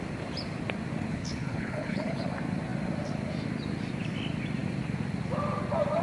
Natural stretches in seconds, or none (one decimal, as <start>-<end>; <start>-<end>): 0.0-1.1; 2.2-6.0